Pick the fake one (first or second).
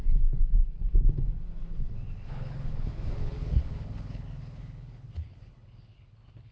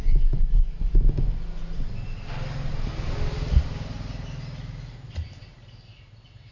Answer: first